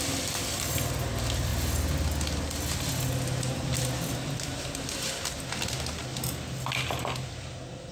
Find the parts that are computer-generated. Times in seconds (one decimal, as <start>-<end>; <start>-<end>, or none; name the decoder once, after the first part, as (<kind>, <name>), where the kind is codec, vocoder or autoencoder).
none